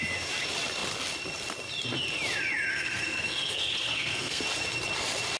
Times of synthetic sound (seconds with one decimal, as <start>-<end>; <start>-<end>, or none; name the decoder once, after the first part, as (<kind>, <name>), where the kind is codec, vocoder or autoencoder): 2.7-4.4 (codec, SNAC)